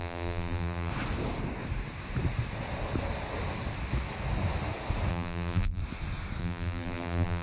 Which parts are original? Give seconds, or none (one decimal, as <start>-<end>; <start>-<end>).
0.9-5.1; 5.8-6.4